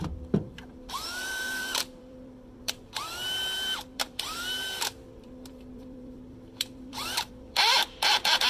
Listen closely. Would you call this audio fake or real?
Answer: fake